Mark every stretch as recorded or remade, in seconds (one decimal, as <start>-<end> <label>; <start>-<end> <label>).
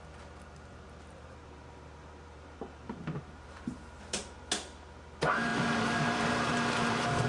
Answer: 0.0-0.7 recorded; 0.7-4.5 remade; 4.5-5.5 recorded; 5.5-7.3 remade